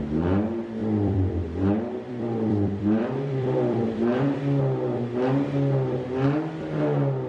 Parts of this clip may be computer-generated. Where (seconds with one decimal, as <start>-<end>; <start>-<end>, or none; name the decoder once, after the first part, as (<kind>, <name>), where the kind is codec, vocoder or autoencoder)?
0.8-4.6 (vocoder, BigVGAN v2)